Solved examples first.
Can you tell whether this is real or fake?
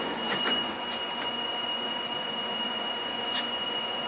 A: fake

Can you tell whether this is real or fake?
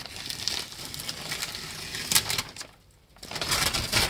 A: real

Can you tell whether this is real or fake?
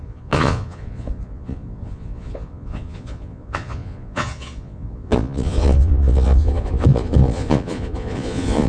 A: fake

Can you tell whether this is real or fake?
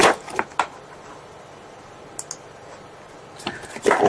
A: real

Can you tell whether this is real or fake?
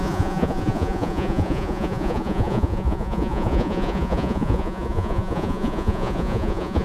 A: fake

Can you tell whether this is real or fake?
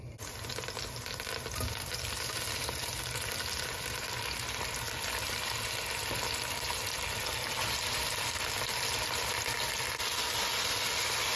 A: real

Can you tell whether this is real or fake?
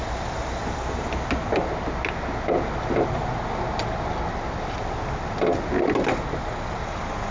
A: real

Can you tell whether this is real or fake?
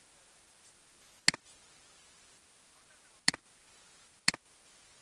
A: real